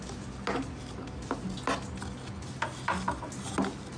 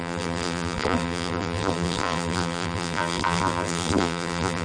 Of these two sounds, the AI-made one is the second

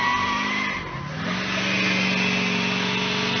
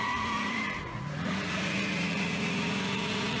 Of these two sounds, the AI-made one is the second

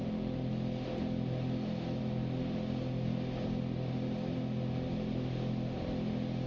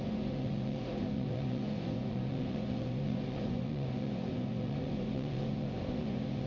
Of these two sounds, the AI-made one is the second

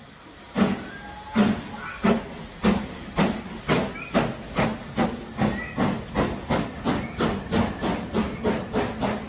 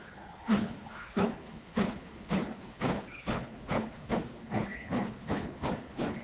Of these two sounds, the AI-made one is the second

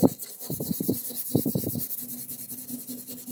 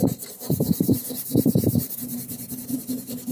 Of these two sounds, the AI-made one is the second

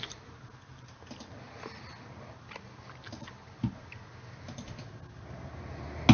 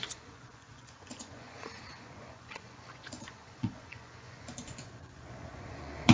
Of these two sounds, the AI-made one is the second